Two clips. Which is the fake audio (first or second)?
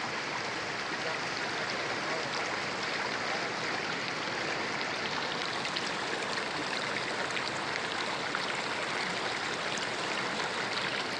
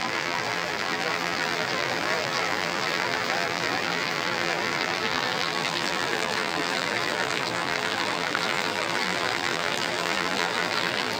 second